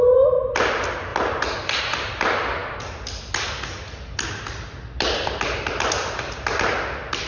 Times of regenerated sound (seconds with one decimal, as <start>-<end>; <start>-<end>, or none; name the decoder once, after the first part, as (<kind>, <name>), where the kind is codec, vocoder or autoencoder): none